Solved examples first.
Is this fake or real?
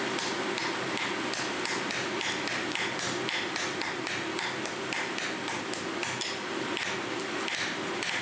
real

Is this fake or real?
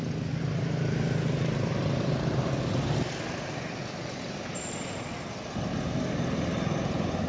real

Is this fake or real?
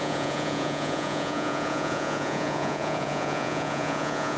fake